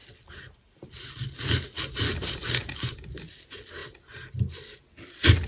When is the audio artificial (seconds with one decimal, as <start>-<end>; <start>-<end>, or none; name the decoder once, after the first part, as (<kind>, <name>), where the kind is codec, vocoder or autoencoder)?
none